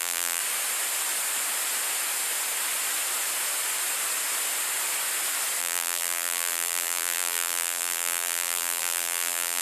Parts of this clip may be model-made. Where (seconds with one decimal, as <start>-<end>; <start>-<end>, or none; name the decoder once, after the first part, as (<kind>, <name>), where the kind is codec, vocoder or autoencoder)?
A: 0.0-0.4 (vocoder, BigVGAN v2); 5.6-9.6